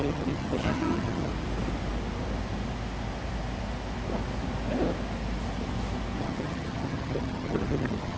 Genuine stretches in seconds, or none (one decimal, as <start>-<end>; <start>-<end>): 1.3-6.2